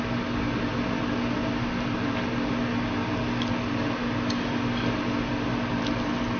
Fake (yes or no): no